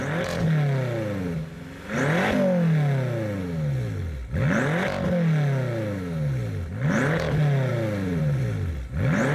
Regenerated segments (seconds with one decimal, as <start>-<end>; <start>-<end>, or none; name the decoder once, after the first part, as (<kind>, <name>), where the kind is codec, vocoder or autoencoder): 7.7-8.7 (vocoder, BigVGAN v2)